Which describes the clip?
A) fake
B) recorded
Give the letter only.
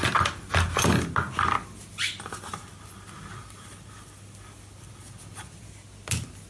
B